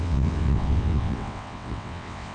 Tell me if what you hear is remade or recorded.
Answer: remade